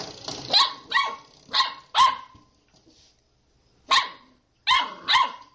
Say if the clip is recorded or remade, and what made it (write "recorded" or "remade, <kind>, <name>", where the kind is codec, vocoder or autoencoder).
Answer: recorded